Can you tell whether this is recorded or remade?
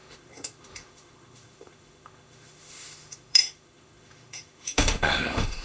remade